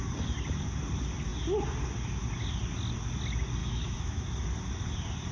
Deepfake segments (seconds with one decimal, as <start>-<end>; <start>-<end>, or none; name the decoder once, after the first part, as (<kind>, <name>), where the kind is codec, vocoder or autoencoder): 3.6-4.2 (autoencoder, DAC-VAE)